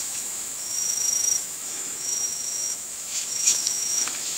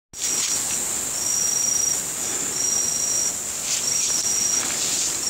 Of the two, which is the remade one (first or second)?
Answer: first